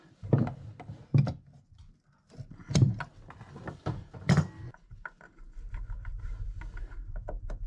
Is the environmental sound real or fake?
real